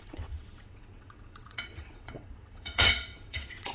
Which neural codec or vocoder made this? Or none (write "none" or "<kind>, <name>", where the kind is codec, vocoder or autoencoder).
vocoder, WaveNeXt